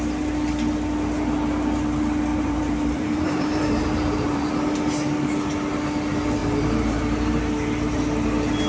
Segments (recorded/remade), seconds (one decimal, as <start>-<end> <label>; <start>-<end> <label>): 0.0-2.3 recorded; 2.3-4.5 remade; 4.5-6.4 recorded; 6.4-7.4 remade; 7.4-8.7 recorded